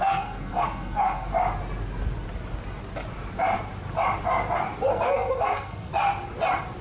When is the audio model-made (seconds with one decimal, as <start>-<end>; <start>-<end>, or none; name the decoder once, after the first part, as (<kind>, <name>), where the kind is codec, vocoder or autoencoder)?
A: 0.0-1.3 (codec, SNAC); 4.9-5.9